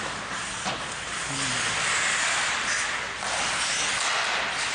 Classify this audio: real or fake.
real